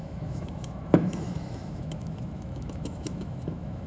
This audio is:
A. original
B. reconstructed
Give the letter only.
B